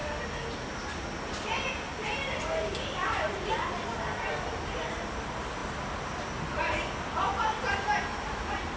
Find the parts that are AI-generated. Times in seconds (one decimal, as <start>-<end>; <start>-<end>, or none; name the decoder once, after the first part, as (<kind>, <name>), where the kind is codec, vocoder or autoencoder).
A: none